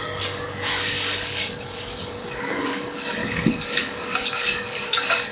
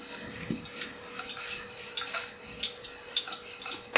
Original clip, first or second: second